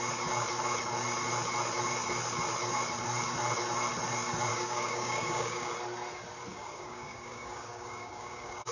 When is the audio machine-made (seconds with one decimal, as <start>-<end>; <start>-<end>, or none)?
4.5-5.7; 6.5-8.7